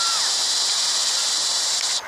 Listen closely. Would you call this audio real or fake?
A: fake